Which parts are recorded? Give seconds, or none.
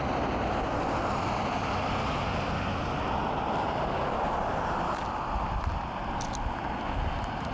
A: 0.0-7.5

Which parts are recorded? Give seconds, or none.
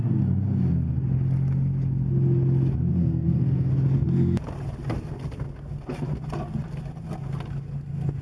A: 0.0-2.9; 3.7-8.2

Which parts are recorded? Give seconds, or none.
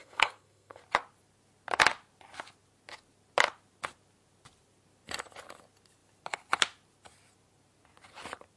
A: 0.8-8.6